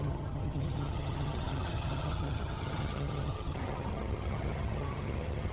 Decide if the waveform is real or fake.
fake